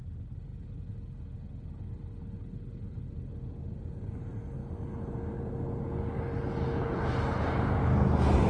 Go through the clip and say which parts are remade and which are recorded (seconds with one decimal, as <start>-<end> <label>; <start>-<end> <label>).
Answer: 0.0-8.5 recorded